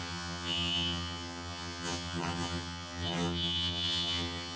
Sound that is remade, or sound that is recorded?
remade